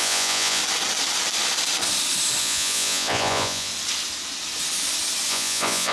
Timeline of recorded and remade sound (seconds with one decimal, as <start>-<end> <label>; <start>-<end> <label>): 0.0-0.6 remade; 0.6-2.4 recorded; 2.4-3.7 remade; 3.7-5.3 recorded; 5.3-5.9 remade